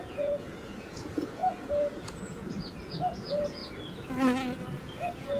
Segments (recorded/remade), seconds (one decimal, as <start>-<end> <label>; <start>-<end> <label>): 0.0-3.6 remade; 3.6-4.8 recorded; 4.8-5.4 remade